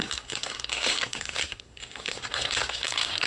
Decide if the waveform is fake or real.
fake